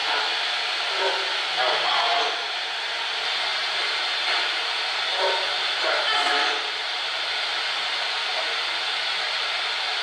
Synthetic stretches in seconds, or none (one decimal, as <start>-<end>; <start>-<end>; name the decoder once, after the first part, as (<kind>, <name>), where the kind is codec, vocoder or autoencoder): 1.6-8.3 (vocoder, BigVGAN v2); 9.0-10.0